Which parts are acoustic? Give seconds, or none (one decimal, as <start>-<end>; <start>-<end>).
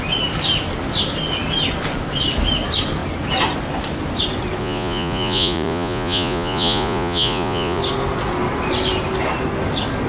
0.0-4.6; 7.8-10.1